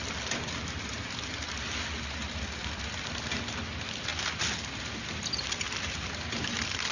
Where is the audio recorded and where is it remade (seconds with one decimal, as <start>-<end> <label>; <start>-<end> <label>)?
0.0-6.9 recorded